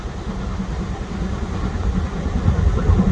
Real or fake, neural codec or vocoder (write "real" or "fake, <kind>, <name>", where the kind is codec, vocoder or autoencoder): real